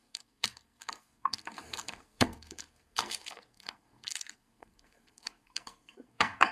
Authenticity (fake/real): fake